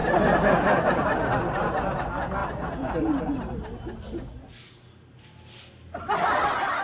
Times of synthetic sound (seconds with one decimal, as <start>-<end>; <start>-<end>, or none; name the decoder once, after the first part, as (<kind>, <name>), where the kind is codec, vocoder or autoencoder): none